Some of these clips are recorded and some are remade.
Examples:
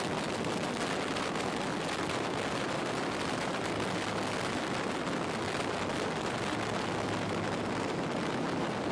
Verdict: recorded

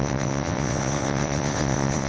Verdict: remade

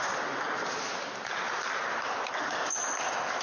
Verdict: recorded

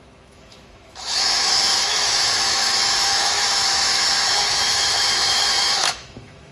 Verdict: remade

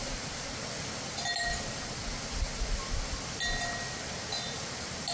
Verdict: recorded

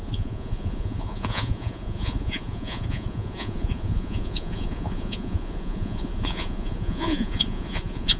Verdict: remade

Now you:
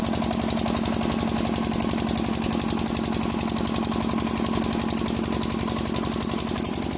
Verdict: recorded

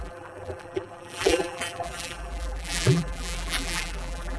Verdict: remade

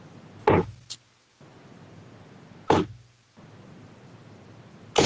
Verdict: recorded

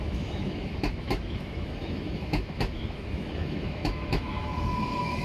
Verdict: remade